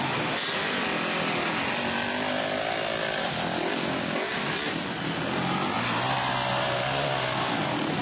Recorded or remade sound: recorded